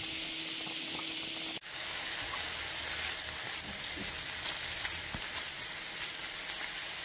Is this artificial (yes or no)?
no